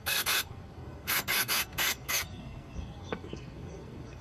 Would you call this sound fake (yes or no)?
yes